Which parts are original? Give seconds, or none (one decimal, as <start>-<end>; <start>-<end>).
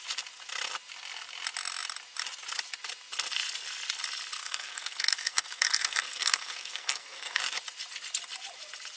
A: 0.0-4.4; 7.4-9.0